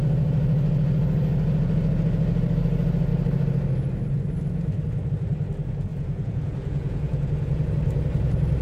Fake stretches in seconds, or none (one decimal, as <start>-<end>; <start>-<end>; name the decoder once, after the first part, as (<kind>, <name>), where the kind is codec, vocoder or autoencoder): 5.9-7.6 (vocoder, Vocos)